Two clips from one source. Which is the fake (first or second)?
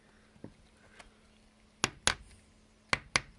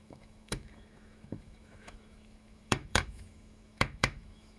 second